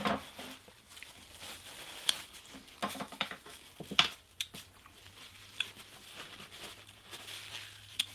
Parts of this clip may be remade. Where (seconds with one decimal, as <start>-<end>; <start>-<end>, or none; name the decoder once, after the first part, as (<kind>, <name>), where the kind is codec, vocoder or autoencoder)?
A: 2.8-3.7 (autoencoder, DAC-VAE)